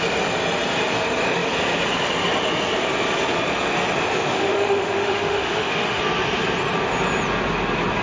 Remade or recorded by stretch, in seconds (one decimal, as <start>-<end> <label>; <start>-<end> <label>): 0.0-4.3 recorded; 4.3-6.0 remade; 6.0-8.0 recorded